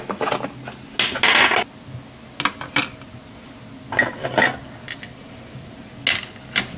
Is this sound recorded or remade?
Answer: recorded